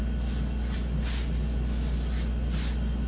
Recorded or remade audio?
recorded